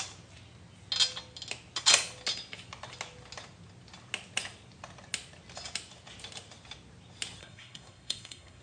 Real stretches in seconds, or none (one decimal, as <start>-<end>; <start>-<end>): 0.0-7.4